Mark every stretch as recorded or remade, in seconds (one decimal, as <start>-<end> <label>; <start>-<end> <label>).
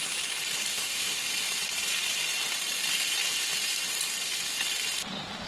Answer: 0.0-0.7 recorded; 0.7-1.3 remade; 1.3-5.5 recorded